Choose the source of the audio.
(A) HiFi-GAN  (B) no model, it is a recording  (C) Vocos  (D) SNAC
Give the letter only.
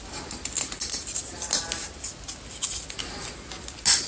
B